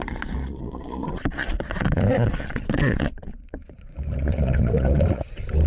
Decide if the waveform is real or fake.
fake